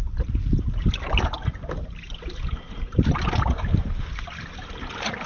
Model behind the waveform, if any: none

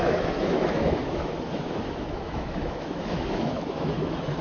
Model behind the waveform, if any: autoencoder, DAC-VAE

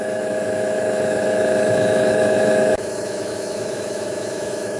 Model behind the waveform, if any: autoencoder, DAC-VAE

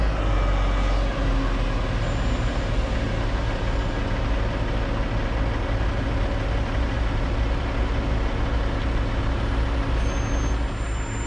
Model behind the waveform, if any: none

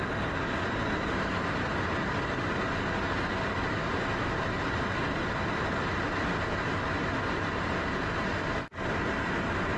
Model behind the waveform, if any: none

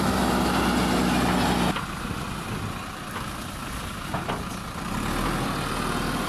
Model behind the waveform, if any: none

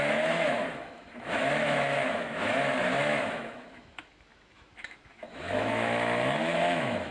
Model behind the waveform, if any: autoencoder, DAC-VAE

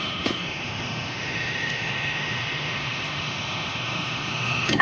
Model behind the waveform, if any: autoencoder, DAC-VAE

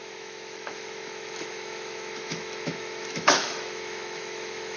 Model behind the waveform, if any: autoencoder, DAC-VAE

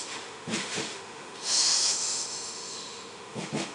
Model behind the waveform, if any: autoencoder, DAC-VAE